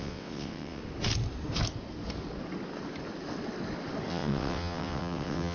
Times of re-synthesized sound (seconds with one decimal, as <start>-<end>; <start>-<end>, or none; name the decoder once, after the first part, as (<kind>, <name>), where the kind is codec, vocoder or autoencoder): 0.0-0.8 (vocoder, WaveNeXt); 4.1-5.5